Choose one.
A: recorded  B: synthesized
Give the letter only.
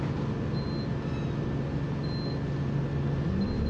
A